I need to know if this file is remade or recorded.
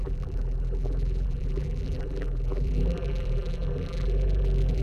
remade